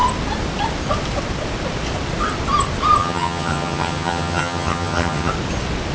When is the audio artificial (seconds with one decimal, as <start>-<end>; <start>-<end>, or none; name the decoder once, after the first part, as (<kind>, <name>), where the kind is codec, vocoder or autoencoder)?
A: 3.0-5.3 (vocoder, HiFi-GAN)